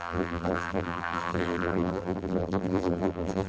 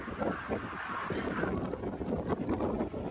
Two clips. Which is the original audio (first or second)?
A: second